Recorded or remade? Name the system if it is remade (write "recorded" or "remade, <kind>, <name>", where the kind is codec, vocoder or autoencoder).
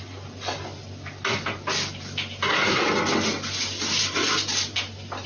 recorded